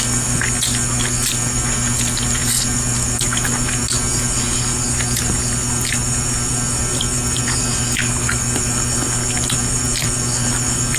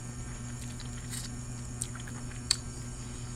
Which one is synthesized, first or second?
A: second